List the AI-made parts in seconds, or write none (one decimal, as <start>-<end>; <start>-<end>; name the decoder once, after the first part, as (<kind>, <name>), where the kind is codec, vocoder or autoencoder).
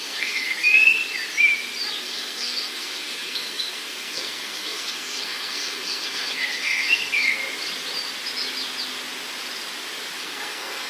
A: 0.0-1.0 (codec, SNAC); 2.0-7.4; 10.2-10.9